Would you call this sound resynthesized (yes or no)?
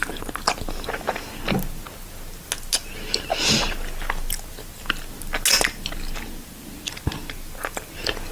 no